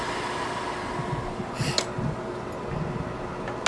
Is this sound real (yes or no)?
yes